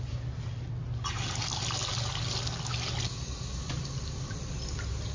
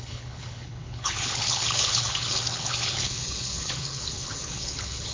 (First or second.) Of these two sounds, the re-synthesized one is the second